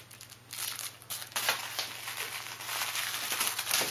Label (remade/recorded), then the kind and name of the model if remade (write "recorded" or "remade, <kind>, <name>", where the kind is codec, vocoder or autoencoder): recorded